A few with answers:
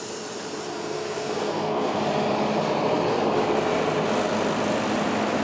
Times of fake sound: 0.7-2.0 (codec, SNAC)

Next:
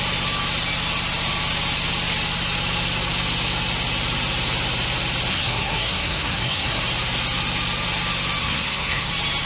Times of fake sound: 5.3-6.8 (codec, SNAC); 8.4-9.1

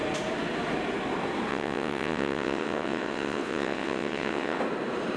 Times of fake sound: 1.5-4.6 (vocoder, WaveNeXt)

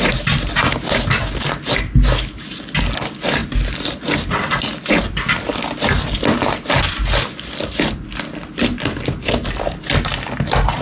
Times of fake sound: none

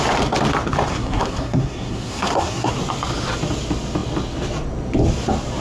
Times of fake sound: 0.9-2.7 (codec, SNAC)